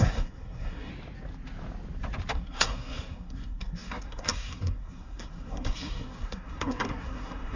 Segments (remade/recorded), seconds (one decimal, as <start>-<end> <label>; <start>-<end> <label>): 0.0-0.9 remade; 0.9-2.3 recorded; 2.3-7.6 remade